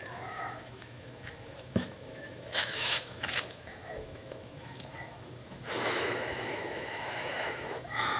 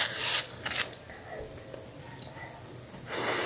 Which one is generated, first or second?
first